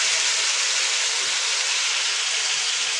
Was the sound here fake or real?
real